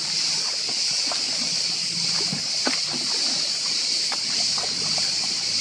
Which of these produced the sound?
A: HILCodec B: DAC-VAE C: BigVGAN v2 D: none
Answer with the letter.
D